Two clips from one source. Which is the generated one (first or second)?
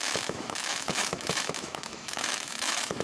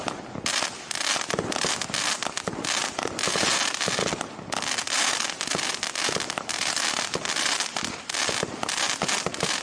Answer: first